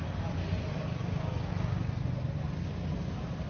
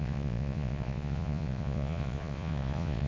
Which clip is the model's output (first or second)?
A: second